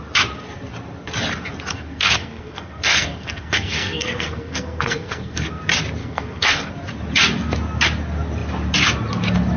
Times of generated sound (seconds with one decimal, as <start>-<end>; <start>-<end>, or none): 1.7-5.6; 6.0-6.7